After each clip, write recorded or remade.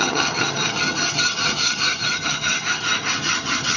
remade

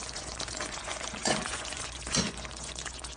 remade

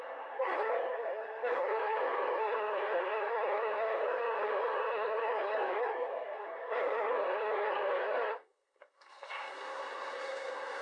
remade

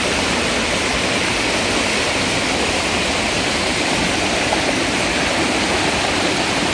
recorded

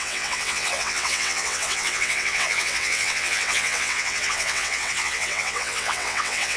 remade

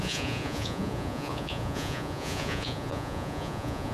remade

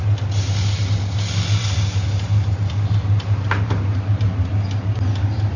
recorded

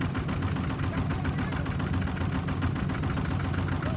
recorded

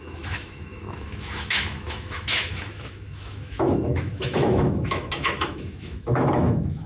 remade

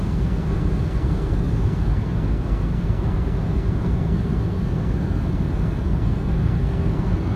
remade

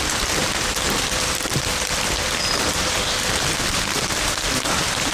remade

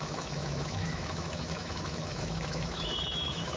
remade